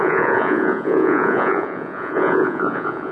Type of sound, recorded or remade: remade